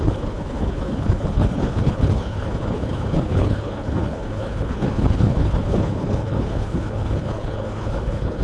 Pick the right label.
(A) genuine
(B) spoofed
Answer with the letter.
B